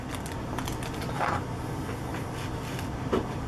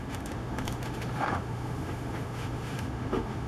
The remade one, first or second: second